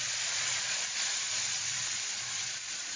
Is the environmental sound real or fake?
fake